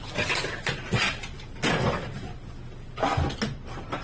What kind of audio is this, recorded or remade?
recorded